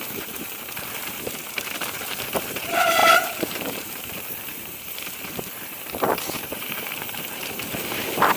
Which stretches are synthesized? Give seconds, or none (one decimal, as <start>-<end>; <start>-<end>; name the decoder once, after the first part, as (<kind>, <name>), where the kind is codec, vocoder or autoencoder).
0.0-8.4 (vocoder, BigVGAN v2)